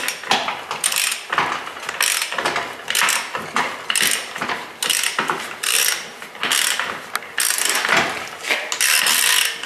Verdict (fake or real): real